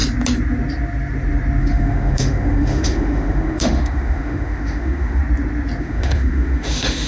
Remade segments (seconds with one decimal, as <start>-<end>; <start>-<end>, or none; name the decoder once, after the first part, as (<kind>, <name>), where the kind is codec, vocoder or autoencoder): 1.6-5.2 (autoencoder, DAC-VAE); 5.8-7.1